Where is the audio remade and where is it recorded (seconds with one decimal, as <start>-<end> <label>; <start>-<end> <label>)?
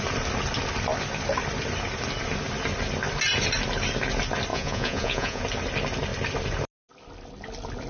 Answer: 0.0-4.5 recorded; 4.5-5.4 remade; 5.4-7.9 recorded